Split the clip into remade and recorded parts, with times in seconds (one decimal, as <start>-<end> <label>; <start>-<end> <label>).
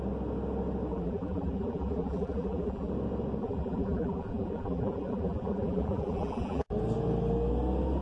0.0-0.9 recorded; 0.9-2.9 remade; 2.9-3.4 recorded; 3.4-6.7 remade; 6.7-8.0 recorded